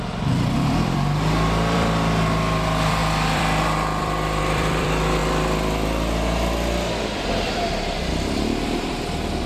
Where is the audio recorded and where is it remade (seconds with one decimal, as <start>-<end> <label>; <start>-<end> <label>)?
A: 0.0-5.2 remade; 5.2-8.1 recorded; 8.1-9.5 remade